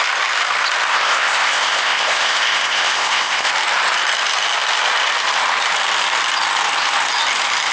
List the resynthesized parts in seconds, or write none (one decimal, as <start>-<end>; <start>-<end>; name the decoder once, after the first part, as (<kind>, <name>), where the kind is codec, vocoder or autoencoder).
0.9-3.5 (codec, ZipCodec)